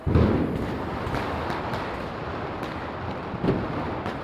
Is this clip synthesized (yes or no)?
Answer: no